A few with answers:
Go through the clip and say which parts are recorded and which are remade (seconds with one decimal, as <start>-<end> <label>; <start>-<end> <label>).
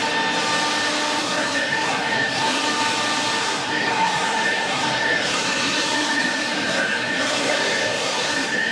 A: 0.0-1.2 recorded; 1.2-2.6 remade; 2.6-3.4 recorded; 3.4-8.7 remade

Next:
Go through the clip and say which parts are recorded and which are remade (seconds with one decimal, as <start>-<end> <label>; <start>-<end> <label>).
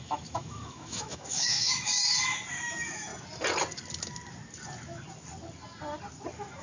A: 0.0-1.9 remade; 1.9-2.5 recorded; 2.5-3.1 remade; 3.1-6.6 recorded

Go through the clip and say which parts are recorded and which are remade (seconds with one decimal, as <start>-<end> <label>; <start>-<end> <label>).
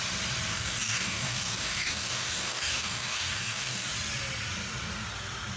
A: 0.0-0.5 recorded; 0.5-3.9 remade; 3.9-5.6 recorded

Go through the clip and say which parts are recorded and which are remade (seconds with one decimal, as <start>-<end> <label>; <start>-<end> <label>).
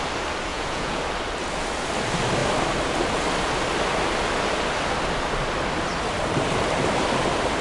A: 0.0-0.5 recorded; 0.5-1.0 remade; 1.0-7.6 recorded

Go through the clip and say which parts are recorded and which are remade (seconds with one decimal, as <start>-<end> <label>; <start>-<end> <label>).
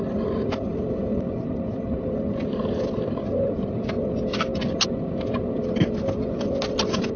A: 0.0-7.2 recorded